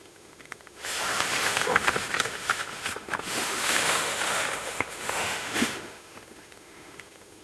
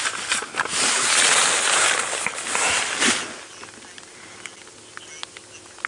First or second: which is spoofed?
first